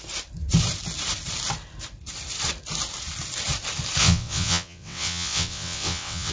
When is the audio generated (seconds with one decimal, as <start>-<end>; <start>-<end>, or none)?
4.0-6.3